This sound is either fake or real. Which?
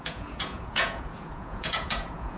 fake